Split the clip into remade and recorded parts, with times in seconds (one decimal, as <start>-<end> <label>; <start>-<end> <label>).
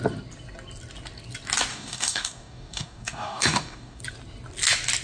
0.0-1.7 recorded; 1.7-4.0 remade; 4.0-5.0 recorded